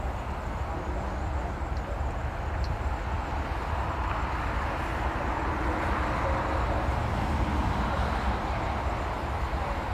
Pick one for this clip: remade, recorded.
recorded